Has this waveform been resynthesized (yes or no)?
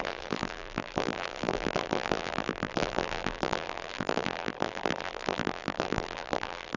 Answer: yes